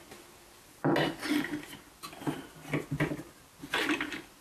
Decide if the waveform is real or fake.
real